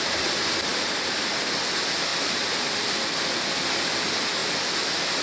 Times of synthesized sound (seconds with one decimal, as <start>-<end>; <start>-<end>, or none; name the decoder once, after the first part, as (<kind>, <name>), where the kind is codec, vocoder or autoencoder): 2.1-3.9 (vocoder, BigVGAN v2)

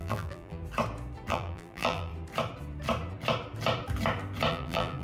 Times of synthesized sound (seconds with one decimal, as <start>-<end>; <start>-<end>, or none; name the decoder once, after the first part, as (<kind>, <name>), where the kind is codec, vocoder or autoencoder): 0.0-0.6 (vocoder, BigVGAN v2); 1.3-2.1; 4.5-5.0

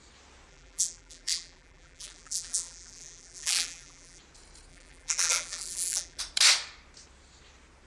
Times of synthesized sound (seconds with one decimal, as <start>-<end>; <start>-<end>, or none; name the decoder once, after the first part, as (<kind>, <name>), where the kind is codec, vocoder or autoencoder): 0.5-4.2 (vocoder, BigVGAN v2); 4.7-6.2

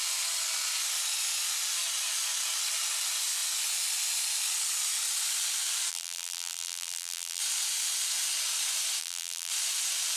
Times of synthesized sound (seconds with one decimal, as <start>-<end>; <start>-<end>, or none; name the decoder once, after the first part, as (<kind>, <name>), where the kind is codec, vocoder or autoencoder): 5.9-7.4 (vocoder, BigVGAN v2); 9.0-9.5

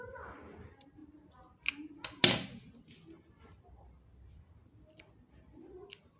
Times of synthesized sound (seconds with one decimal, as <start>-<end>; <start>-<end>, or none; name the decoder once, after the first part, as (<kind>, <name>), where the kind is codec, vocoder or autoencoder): none

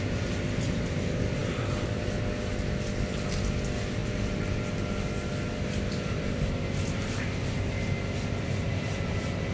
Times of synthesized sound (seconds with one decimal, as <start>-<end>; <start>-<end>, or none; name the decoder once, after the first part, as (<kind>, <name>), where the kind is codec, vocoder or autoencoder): none

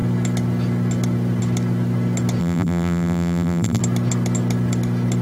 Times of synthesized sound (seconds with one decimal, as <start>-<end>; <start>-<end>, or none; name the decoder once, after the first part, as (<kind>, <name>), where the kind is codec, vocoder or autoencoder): 2.4-3.8 (vocoder, BigVGAN v2)